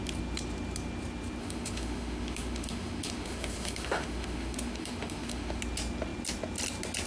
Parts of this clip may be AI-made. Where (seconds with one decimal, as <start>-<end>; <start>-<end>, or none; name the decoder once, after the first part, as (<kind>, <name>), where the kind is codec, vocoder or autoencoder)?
1.4-5.6 (autoencoder, DAC-VAE)